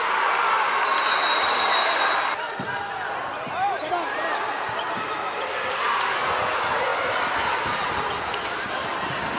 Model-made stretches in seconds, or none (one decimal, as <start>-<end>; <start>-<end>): none